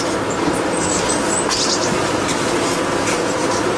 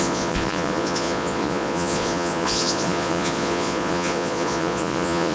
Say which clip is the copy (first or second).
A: second